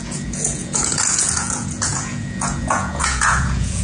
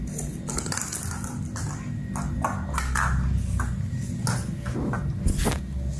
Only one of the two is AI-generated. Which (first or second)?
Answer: first